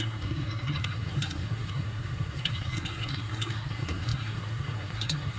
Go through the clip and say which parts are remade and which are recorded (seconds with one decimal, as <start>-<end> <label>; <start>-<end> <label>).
0.0-5.4 remade